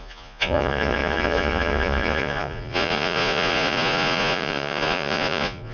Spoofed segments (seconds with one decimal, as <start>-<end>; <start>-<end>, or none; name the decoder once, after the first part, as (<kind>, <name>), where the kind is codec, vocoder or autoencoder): 0.0-5.7 (vocoder, Vocos)